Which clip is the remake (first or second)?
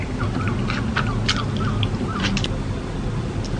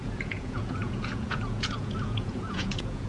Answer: second